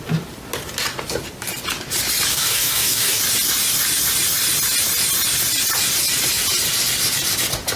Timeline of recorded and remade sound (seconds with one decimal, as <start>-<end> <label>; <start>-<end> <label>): 0.0-2.3 recorded; 2.3-3.2 remade; 3.2-7.8 recorded